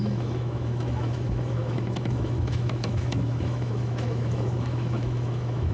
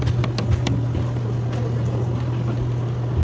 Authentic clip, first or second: second